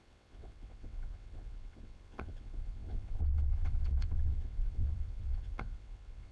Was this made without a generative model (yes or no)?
no